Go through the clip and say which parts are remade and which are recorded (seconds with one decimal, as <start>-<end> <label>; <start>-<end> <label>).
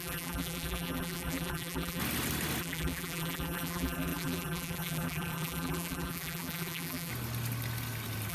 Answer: 0.0-2.0 remade; 2.0-2.6 recorded; 2.6-7.1 remade; 7.1-8.3 recorded